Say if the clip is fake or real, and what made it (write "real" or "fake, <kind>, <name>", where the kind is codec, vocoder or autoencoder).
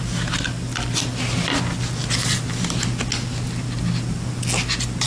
real